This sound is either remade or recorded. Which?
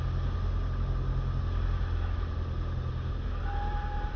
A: recorded